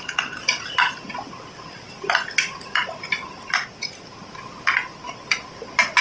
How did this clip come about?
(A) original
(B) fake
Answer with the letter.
A